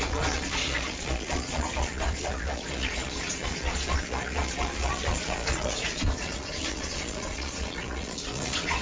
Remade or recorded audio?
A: remade